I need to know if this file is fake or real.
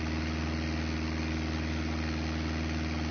real